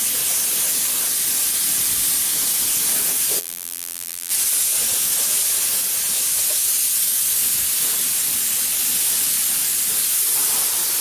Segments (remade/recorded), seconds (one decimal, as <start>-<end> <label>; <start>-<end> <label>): 0.0-3.4 recorded; 3.4-4.3 remade; 4.3-11.0 recorded